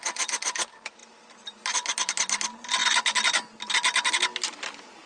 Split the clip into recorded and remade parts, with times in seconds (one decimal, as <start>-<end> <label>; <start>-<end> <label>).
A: 0.0-5.1 recorded